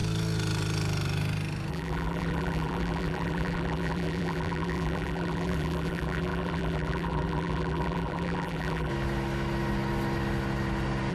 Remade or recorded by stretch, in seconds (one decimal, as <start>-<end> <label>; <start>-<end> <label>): 0.0-1.7 recorded; 1.7-8.9 remade; 8.9-11.1 recorded